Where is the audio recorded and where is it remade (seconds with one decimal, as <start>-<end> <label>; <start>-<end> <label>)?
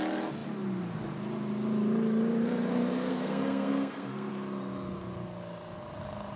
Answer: 0.0-3.1 recorded; 3.1-4.3 remade; 4.3-6.4 recorded